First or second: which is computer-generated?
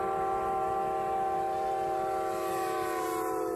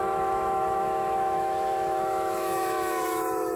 second